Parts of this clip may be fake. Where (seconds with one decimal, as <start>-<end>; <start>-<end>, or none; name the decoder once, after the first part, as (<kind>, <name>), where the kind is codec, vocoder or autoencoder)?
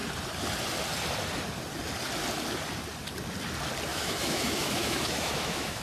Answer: 3.9-5.8 (autoencoder, DAC-VAE)